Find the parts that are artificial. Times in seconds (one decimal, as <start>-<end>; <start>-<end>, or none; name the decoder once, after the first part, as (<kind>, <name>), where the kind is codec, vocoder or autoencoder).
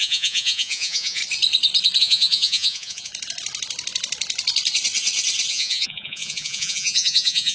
0.0-1.2 (vocoder, Vocos); 2.0-3.1; 5.5-7.5